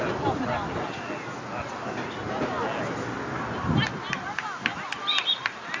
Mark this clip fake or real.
real